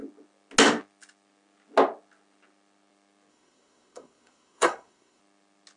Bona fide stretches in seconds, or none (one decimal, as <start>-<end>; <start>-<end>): 0.0-3.3; 5.2-5.8

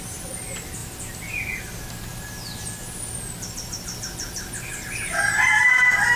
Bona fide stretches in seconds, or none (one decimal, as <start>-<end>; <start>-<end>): 0.0-6.2

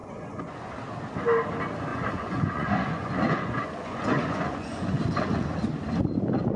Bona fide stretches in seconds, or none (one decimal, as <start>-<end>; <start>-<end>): 0.7-1.9; 5.0-6.6

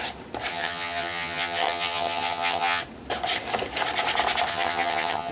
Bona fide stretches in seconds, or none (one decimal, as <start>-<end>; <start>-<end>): 0.0-0.5; 2.8-4.5

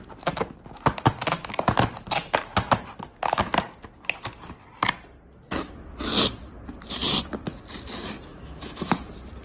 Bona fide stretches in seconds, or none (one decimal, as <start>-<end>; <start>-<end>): 0.0-8.3; 8.9-9.4

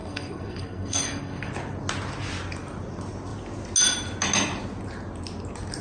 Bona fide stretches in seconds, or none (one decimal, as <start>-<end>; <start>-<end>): 1.5-5.8